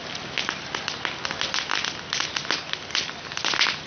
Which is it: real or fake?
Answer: real